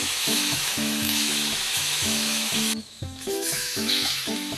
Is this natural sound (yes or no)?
no